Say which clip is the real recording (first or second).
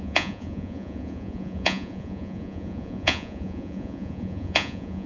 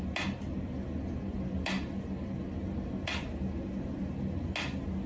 second